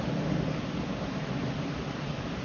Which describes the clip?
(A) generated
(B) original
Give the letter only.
B